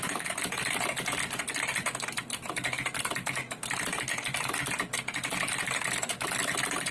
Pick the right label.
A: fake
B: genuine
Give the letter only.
B